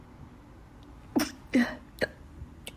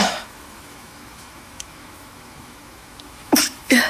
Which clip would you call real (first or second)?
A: first